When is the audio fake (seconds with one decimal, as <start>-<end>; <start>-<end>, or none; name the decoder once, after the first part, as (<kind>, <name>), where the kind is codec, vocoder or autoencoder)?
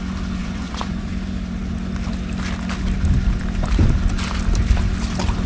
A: 0.4-1.1 (vocoder, Vocos)